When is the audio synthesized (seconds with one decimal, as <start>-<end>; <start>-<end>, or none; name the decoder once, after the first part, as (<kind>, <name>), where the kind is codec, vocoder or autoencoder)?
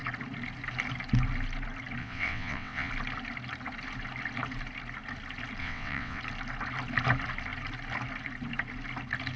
2.0-2.9 (vocoder, WaveNeXt); 5.6-6.2